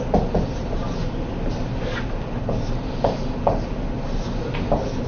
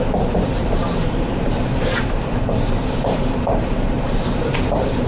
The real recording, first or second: first